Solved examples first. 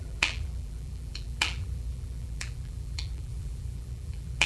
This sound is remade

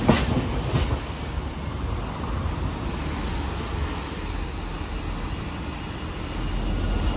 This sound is recorded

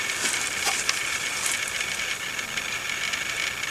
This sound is recorded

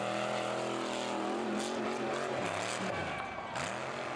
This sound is recorded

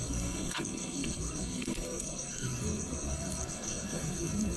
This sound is remade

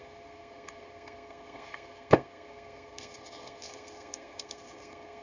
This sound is remade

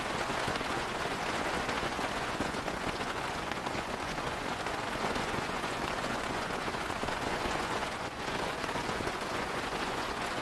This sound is remade